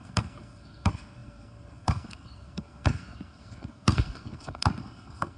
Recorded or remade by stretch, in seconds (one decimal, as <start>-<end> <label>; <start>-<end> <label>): 0.0-5.4 remade